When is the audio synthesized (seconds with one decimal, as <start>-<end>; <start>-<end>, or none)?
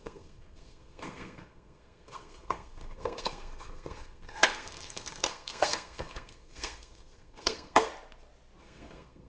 0.0-7.9; 8.6-9.3